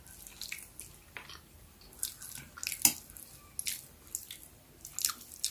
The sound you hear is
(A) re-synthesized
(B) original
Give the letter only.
B